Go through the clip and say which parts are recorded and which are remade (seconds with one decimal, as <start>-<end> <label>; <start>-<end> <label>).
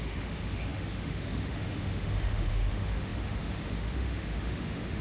0.0-5.0 remade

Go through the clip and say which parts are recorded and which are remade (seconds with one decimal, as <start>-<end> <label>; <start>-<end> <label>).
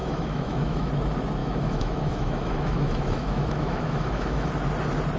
0.0-0.9 remade; 0.9-1.4 recorded; 1.4-4.5 remade; 4.5-5.2 recorded